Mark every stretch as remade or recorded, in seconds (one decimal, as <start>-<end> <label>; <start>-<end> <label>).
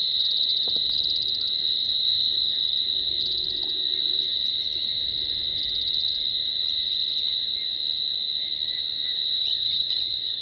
0.0-9.5 recorded; 9.5-10.4 remade